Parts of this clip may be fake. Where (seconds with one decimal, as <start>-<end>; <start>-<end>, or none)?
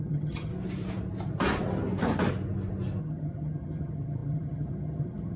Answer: 0.0-0.5; 3.0-5.4